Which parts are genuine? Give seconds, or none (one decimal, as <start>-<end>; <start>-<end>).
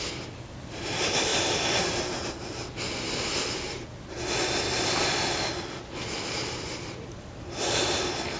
0.0-8.4